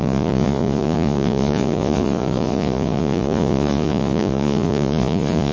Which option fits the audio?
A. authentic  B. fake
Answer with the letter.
B